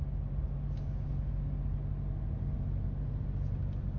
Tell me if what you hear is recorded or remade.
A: recorded